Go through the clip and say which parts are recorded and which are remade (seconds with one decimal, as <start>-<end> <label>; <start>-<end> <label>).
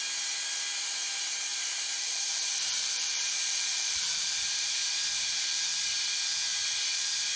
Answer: 0.0-1.5 recorded; 1.5-5.6 remade; 5.6-7.4 recorded